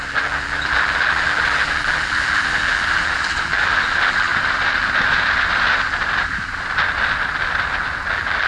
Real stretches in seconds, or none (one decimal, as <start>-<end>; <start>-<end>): 4.3-8.1